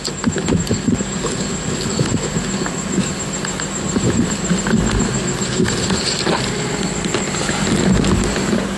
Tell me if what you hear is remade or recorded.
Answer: recorded